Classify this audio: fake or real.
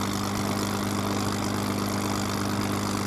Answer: real